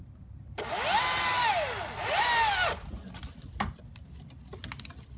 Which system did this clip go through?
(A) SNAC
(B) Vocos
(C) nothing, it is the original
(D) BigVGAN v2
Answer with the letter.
C